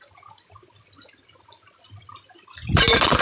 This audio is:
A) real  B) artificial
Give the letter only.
A